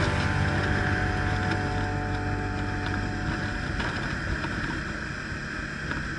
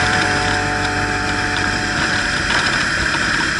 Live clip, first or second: first